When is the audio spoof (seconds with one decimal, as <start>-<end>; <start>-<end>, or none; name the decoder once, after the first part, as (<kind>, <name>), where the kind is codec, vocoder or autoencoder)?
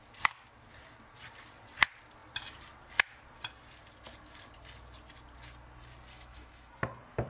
6.1-6.7 (autoencoder, DAC-VAE)